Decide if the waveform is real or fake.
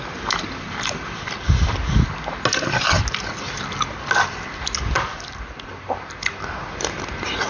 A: real